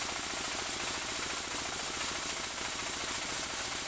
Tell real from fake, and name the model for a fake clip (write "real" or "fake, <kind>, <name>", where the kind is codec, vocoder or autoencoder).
real